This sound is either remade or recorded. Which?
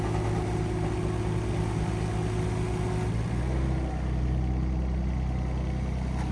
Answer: recorded